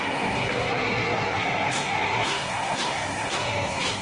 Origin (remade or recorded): remade